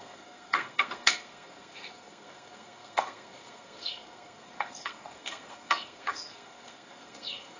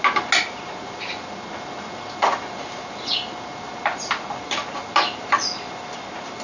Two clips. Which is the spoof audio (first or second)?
first